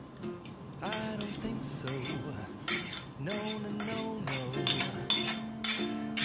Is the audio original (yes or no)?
yes